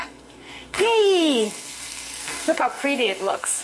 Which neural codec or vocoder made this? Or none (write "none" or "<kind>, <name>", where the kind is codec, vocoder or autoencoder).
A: codec, SNAC